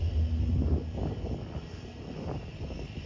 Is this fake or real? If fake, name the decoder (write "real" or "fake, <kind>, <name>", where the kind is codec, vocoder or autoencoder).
real